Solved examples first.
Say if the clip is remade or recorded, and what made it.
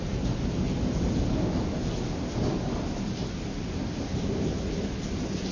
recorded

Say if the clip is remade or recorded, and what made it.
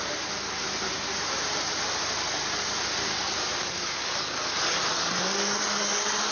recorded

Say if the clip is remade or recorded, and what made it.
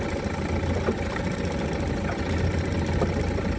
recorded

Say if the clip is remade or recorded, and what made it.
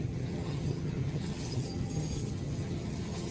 remade, vocoder, HiFi-GAN